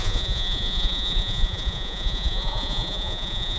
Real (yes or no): no